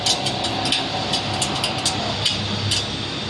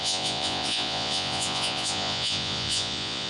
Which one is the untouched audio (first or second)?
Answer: first